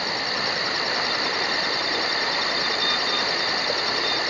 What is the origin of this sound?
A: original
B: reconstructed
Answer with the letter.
A